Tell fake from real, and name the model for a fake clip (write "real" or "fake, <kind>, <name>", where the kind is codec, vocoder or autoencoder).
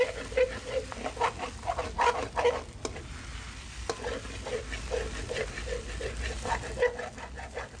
real